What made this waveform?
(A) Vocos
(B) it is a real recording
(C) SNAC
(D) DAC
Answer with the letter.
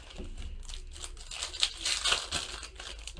B